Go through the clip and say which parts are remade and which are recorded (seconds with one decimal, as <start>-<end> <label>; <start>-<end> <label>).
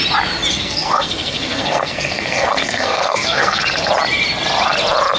0.0-0.5 recorded; 0.5-3.6 remade; 3.6-5.2 recorded